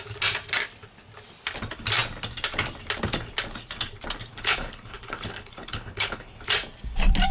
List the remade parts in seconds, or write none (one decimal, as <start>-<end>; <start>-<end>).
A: 4.3-6.4